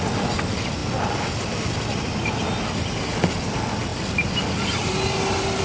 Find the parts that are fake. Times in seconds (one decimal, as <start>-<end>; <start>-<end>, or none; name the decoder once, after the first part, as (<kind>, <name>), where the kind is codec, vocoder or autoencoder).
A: none